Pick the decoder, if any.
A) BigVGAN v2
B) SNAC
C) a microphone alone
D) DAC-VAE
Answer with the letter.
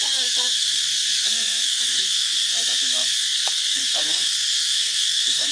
B